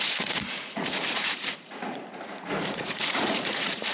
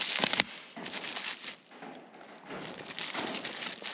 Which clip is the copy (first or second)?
first